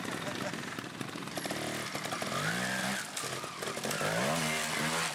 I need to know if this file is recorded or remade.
recorded